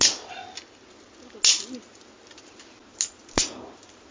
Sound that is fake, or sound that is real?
real